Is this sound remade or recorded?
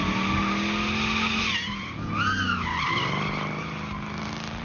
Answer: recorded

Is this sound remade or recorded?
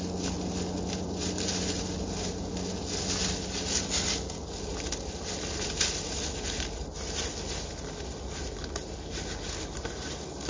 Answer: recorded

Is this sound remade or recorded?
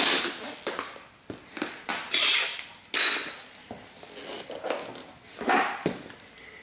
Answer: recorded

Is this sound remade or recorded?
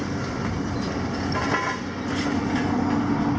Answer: recorded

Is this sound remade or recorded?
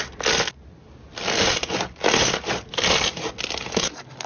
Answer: recorded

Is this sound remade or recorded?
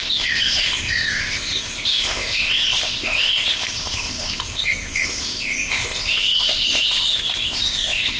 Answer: remade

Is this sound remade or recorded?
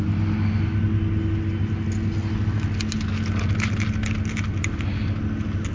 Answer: recorded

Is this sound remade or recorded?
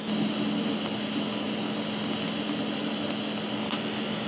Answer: recorded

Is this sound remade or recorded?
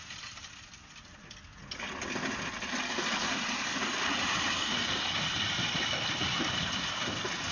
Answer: recorded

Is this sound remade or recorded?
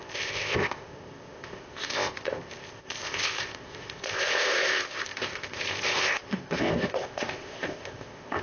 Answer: remade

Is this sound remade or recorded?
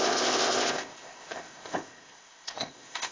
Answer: remade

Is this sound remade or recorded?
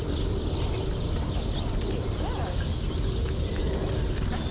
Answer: recorded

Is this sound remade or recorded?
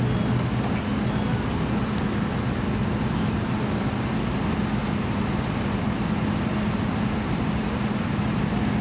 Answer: recorded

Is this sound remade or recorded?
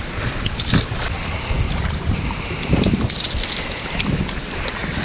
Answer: recorded